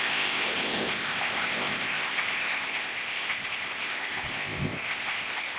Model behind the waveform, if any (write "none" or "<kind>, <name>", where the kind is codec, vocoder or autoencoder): codec, ZipCodec